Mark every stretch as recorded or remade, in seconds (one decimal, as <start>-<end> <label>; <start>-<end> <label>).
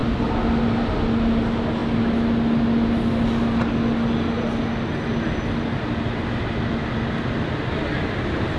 0.0-8.6 recorded